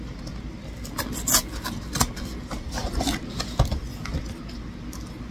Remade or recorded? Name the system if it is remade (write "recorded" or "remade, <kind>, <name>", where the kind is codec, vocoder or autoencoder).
recorded